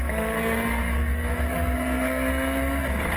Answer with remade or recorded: remade